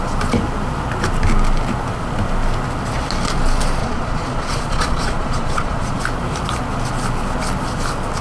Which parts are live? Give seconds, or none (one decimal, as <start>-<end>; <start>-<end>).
0.0-3.8; 6.0-8.2